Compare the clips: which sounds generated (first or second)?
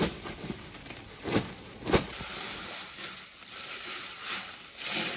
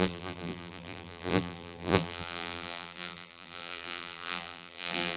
second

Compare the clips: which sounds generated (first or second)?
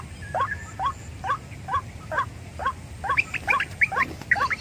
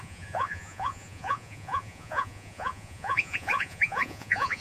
second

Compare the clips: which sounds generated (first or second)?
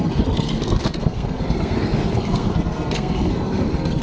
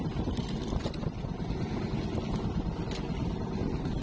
first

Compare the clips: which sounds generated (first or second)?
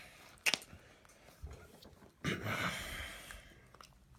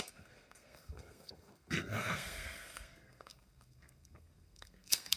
second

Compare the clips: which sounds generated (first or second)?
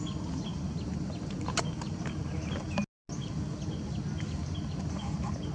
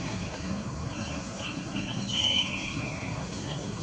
second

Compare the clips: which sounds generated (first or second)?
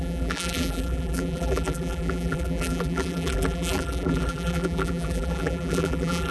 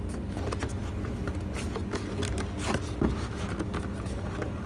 first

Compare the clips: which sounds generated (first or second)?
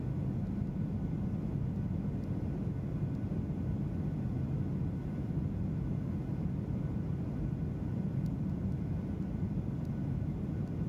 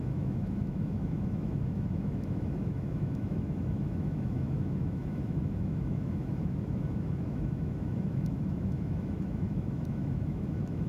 second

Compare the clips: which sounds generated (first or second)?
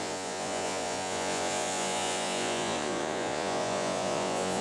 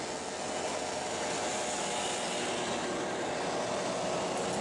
first